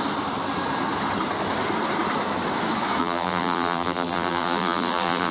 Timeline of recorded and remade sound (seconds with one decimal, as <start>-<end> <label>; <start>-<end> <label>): 0.0-3.0 recorded; 3.0-5.3 remade